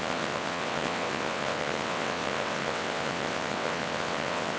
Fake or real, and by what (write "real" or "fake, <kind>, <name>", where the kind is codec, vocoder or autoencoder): fake, vocoder, WaveNeXt